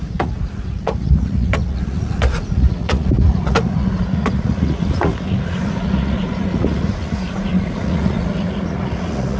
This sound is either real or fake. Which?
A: fake